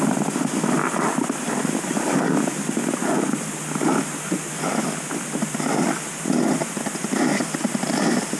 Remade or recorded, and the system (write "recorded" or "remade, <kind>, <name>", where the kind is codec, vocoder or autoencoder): recorded